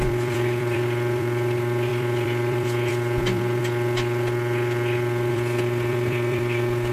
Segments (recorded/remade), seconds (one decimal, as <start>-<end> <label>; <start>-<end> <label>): 0.0-3.6 remade; 3.6-5.3 recorded; 5.3-6.9 remade